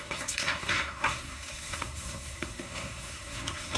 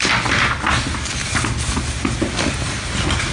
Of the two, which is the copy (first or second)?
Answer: first